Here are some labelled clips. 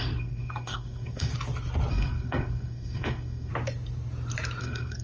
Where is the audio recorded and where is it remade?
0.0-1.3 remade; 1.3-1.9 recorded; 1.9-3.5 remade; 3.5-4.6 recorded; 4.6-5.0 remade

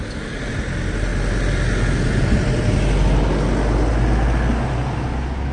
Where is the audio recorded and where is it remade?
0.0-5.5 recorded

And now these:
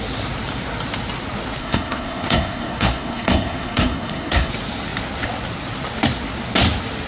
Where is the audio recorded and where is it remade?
0.0-1.6 recorded; 1.6-4.5 remade; 4.5-7.1 recorded

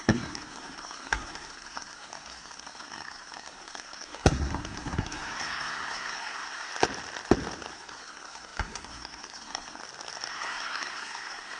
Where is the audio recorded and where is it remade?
0.0-6.7 remade; 6.7-7.7 recorded; 7.7-9.8 remade; 9.8-10.3 recorded; 10.3-11.6 remade